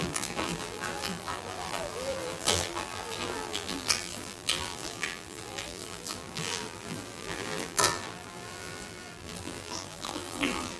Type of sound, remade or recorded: remade